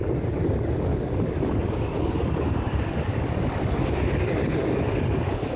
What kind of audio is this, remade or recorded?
remade